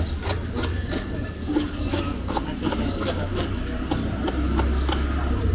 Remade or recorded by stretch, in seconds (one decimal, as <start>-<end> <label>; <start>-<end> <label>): 0.0-0.7 recorded; 0.7-3.6 remade; 3.6-5.5 recorded